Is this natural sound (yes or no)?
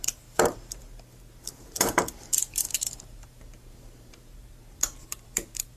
no